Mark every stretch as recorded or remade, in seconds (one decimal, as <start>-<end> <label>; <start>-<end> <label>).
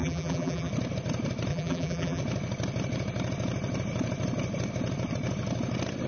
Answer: 0.0-0.7 remade; 0.7-1.5 recorded; 1.5-2.2 remade; 2.2-6.1 recorded